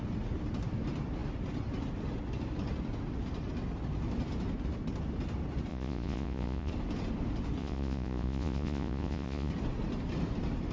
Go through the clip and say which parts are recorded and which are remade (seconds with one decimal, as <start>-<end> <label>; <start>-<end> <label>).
0.0-5.7 recorded; 5.7-6.7 remade; 6.7-7.6 recorded; 7.6-9.5 remade; 9.5-10.7 recorded